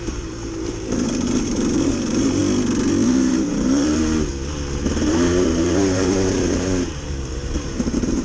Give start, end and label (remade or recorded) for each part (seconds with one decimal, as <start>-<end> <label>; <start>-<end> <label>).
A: 0.0-2.4 remade; 2.4-3.3 recorded; 3.3-4.3 remade; 4.3-5.1 recorded; 5.1-8.2 remade